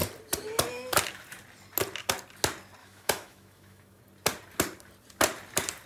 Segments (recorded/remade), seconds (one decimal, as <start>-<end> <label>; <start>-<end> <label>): 0.0-2.8 recorded; 2.8-4.0 remade; 4.0-5.9 recorded